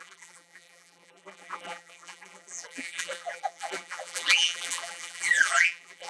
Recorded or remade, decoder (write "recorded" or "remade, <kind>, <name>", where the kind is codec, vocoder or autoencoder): remade, vocoder, BigVGAN v2